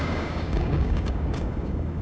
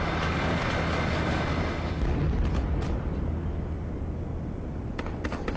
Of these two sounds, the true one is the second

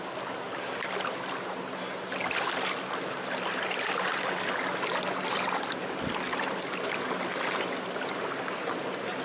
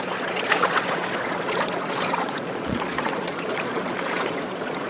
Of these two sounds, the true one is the first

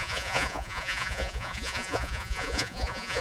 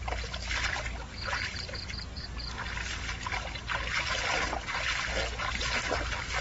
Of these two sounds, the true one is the second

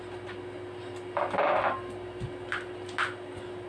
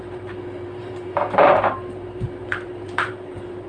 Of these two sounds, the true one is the first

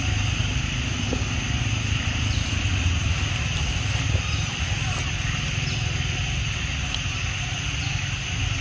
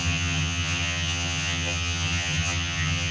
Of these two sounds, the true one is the first